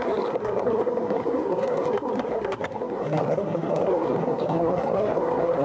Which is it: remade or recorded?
remade